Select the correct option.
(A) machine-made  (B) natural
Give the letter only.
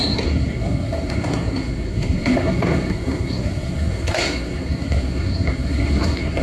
A